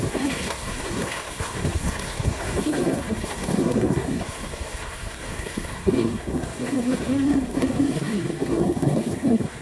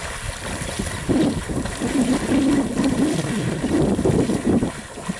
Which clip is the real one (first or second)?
second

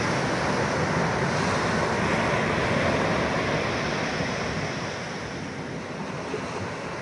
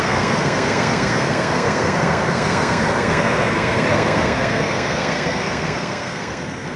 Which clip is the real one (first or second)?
first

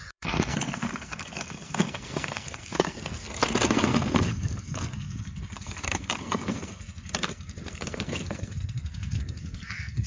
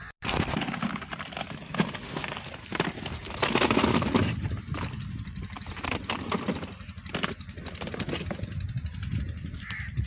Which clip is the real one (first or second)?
second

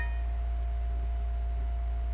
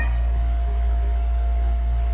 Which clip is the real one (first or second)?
first